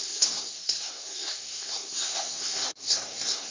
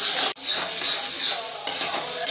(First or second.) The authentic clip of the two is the second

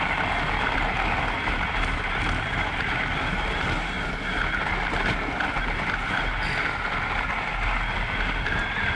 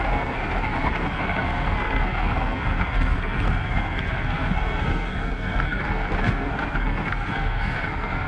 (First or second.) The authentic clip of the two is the first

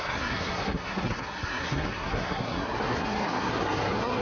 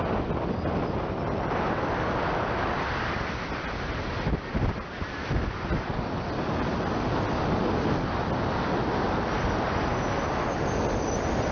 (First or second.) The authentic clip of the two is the second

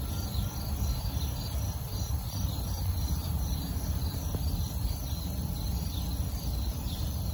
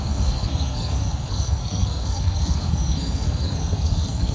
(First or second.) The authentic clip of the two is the first